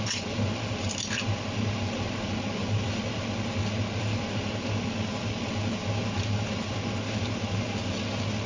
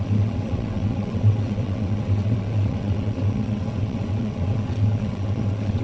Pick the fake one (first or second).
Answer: second